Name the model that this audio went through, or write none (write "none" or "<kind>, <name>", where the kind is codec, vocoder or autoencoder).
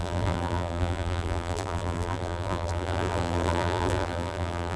vocoder, BigVGAN v2